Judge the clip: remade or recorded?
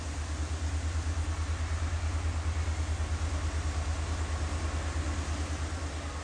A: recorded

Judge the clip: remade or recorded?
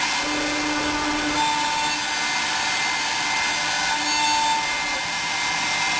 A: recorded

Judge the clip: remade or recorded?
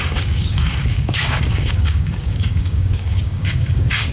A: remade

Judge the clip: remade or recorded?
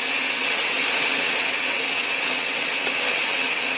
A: remade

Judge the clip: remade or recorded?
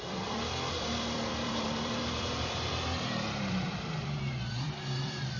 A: remade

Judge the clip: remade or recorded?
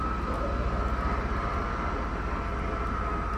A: recorded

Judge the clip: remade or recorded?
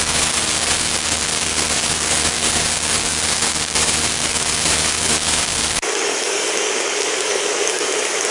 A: remade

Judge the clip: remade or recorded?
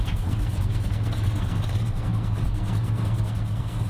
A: remade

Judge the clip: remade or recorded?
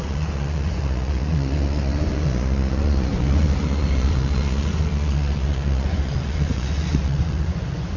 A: remade